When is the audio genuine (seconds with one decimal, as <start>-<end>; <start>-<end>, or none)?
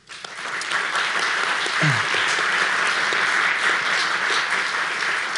0.0-5.4